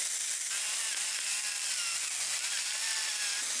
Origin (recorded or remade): recorded